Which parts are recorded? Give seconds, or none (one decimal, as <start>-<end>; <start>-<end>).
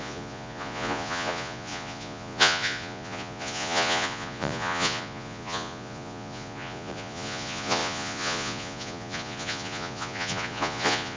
none